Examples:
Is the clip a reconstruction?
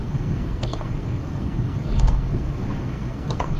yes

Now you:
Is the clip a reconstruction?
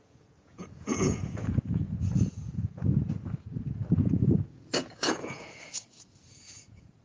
yes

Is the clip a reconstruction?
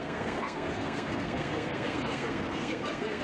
yes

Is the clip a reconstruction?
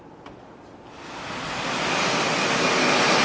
no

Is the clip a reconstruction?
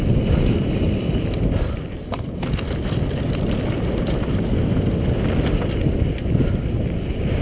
no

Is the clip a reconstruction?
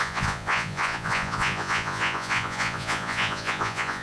yes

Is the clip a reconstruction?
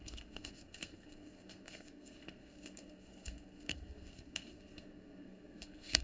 yes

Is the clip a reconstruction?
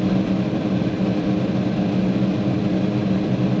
no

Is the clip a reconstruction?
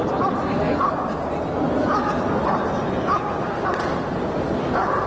no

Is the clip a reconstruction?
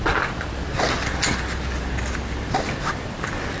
no